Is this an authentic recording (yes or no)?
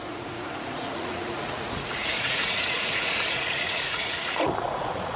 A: no